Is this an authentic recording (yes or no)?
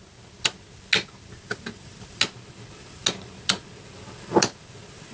yes